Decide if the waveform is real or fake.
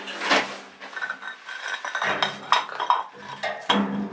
real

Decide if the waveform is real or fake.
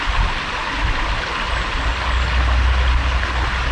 real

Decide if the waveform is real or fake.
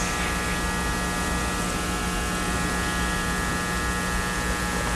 real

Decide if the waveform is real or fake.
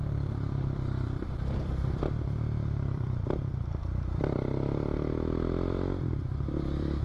fake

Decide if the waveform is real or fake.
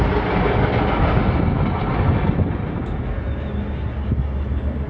real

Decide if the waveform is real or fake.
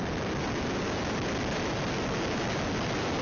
real